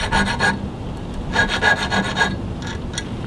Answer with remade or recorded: recorded